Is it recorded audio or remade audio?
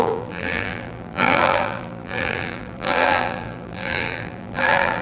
remade